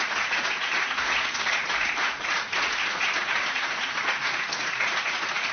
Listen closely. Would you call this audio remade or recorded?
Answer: remade